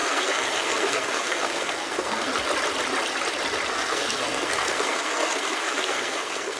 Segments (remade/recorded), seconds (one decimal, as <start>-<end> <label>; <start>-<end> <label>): 0.0-2.3 remade; 2.3-3.7 recorded; 3.7-6.6 remade